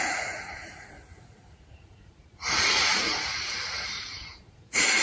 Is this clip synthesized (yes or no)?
yes